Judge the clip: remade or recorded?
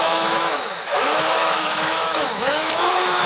remade